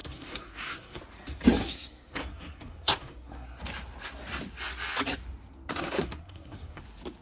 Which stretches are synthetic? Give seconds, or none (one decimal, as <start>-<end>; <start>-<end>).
0.0-1.0; 1.6-3.6; 5.7-6.8